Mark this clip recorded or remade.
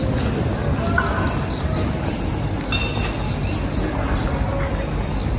recorded